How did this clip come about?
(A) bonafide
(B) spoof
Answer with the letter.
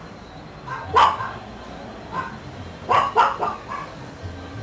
A